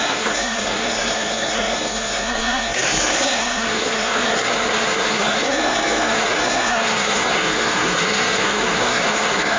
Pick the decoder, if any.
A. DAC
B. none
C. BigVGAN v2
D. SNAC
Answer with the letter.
D